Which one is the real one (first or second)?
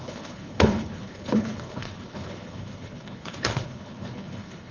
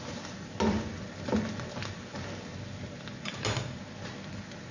second